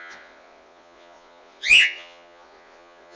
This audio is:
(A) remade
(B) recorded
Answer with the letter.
A